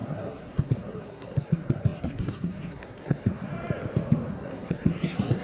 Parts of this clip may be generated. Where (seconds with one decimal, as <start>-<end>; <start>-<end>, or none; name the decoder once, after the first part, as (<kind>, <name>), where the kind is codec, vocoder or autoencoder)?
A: 0.0-3.5 (codec, SNAC); 4.3-5.4